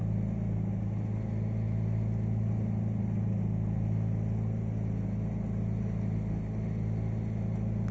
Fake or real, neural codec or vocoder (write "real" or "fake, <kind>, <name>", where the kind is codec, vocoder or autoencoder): real